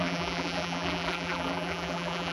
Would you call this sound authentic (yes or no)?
no